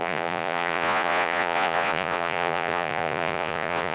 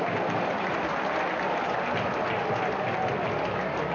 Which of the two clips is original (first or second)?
second